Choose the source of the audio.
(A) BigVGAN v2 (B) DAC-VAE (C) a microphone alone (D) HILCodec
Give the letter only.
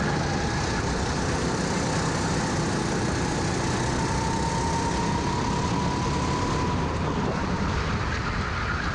C